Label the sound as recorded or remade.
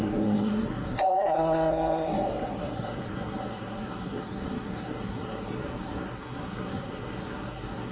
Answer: remade